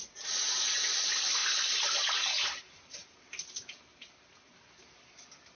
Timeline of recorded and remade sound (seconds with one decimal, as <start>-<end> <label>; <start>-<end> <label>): 0.0-5.5 recorded